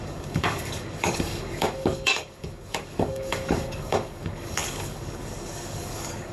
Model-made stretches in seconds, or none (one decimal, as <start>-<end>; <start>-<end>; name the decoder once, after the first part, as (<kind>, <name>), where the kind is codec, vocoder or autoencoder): 0.0-6.3 (codec, DAC)